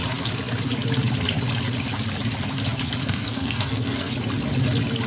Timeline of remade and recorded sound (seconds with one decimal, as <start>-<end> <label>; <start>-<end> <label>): 0.0-3.0 recorded; 3.0-4.1 remade; 4.1-5.1 recorded

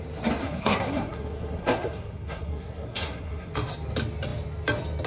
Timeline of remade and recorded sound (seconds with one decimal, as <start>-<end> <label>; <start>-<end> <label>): 0.0-0.4 recorded; 0.4-3.5 remade; 3.5-5.1 recorded

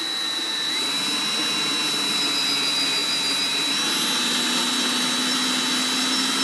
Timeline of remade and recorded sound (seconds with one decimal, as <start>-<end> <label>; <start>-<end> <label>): 0.0-6.4 recorded

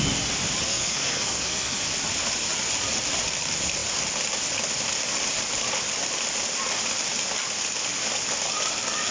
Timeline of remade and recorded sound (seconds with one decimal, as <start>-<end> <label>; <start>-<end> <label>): 0.0-0.7 recorded; 0.7-1.8 remade; 1.8-9.1 recorded

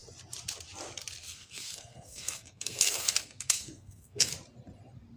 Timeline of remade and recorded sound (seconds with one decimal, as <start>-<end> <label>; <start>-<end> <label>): 0.0-1.2 recorded; 1.2-4.3 remade; 4.3-5.2 recorded